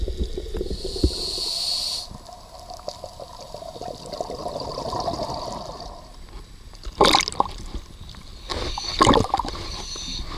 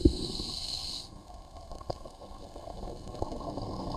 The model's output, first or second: second